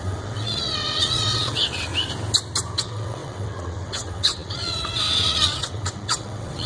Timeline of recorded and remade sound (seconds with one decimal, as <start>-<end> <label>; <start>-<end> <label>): 0.0-1.9 remade; 1.9-2.8 recorded; 2.8-6.7 remade